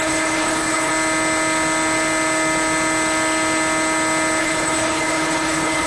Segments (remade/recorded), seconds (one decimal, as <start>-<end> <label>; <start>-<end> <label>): 0.0-0.9 remade; 0.9-4.4 recorded; 4.4-5.9 remade